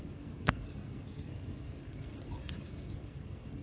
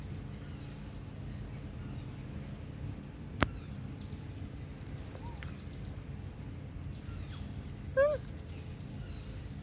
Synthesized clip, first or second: first